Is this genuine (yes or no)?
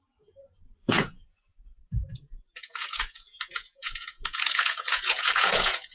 no